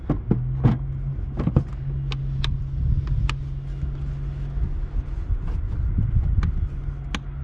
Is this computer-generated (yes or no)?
no